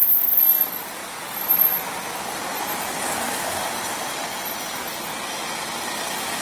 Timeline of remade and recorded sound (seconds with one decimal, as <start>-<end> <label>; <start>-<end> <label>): 0.0-6.4 remade